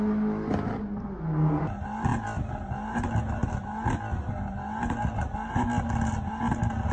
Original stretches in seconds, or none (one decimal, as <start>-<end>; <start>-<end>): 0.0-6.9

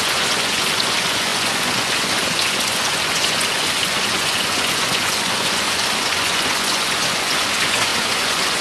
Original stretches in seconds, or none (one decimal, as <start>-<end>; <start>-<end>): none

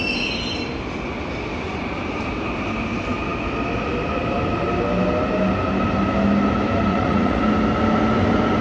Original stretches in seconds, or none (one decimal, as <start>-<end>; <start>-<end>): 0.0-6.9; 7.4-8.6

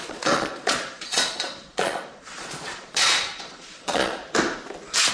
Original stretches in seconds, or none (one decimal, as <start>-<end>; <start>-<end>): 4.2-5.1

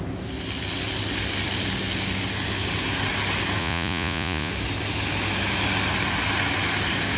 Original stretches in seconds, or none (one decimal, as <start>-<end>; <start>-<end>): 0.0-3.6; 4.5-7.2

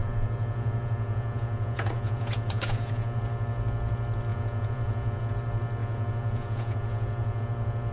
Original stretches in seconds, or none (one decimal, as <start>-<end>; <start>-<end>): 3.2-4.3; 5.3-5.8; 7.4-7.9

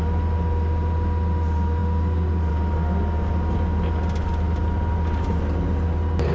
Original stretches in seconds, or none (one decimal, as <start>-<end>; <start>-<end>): 0.0-6.3